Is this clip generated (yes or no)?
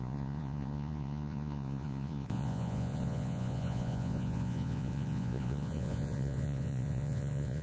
yes